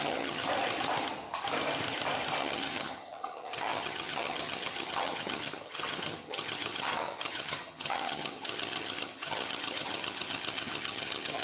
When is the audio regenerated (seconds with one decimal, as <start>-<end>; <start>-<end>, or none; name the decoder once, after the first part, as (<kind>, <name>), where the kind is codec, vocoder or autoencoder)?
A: 0.0-0.4 (vocoder, HiFi-GAN); 2.4-11.4